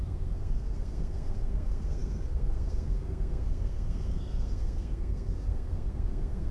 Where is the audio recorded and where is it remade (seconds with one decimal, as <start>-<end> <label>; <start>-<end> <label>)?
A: 0.0-6.5 remade